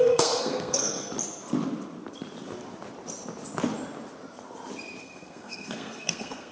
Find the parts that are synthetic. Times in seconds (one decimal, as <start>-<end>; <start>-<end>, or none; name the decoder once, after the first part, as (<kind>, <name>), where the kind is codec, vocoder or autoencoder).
0.0-1.1 (codec, SNAC); 5.0-6.5